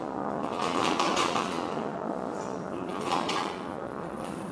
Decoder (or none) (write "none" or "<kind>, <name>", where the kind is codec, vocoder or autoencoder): vocoder, Vocos